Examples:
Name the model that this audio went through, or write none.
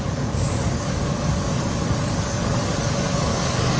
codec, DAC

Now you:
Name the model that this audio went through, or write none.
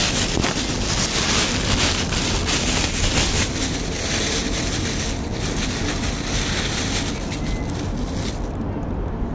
none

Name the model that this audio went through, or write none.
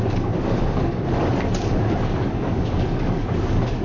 codec, DAC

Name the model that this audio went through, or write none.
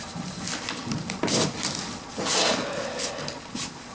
none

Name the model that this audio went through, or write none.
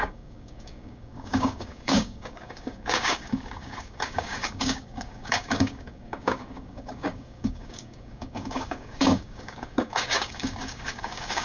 codec, DAC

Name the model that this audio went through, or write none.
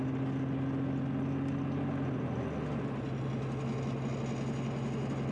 none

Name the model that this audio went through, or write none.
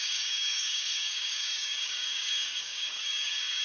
codec, DAC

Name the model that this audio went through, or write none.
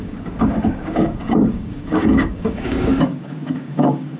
codec, DAC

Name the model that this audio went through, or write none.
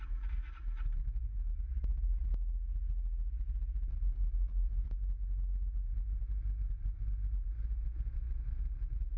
none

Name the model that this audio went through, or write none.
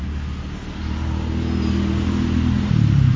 none